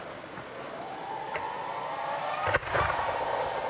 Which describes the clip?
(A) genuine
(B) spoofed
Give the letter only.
A